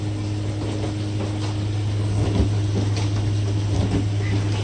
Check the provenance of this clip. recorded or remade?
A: recorded